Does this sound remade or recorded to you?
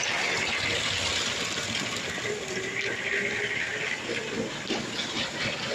recorded